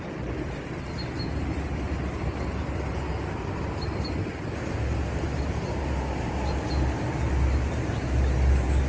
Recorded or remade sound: recorded